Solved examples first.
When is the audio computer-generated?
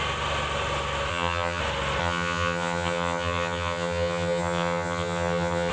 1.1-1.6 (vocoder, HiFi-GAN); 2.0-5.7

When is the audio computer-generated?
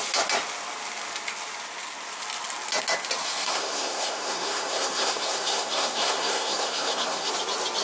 3.2-7.3 (codec, SNAC)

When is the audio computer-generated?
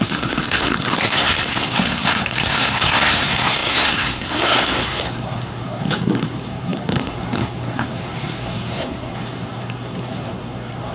0.0-10.9 (codec, SNAC)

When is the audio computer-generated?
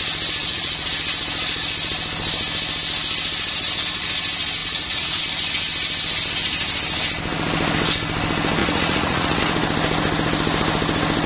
0.4-0.9 (vocoder, Vocos); 4.6-5.2; 8.6-9.4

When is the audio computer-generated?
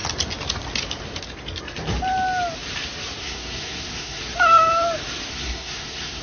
3.2-4.2 (codec, SNAC); 5.3-6.2